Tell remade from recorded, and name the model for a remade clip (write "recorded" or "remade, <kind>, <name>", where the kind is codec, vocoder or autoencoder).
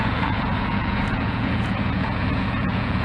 remade, vocoder, Vocos